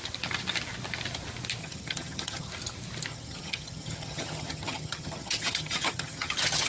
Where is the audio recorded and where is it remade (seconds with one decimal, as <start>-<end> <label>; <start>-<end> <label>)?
0.0-1.6 recorded; 1.6-2.5 remade; 2.5-3.1 recorded; 3.1-6.7 remade